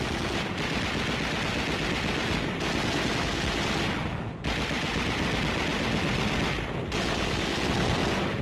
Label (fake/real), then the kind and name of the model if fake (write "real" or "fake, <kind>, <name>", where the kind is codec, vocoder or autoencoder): real